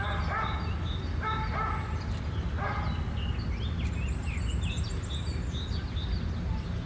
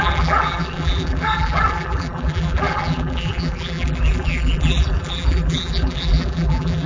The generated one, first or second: second